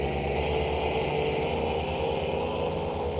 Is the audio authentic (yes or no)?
yes